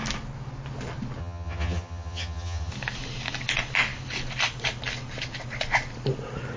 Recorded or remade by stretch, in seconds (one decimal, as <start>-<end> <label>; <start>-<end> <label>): 0.0-1.2 recorded; 1.2-2.7 remade; 2.7-6.6 recorded